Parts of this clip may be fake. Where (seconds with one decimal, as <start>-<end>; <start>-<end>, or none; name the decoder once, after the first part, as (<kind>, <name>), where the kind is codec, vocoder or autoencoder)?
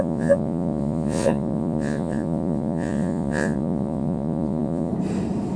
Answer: 0.0-4.9 (vocoder, Vocos)